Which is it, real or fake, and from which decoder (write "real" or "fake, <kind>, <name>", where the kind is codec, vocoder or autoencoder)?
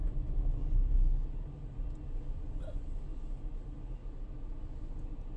real